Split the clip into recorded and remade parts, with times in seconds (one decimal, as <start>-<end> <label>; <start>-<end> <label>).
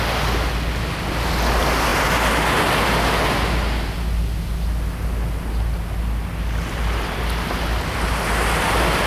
0.0-9.1 recorded